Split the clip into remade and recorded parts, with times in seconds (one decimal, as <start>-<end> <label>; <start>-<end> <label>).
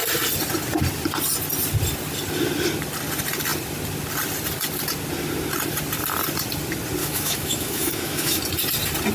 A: 0.0-7.0 recorded; 7.0-8.4 remade; 8.4-9.1 recorded